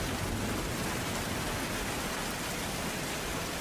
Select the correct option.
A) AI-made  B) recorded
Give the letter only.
B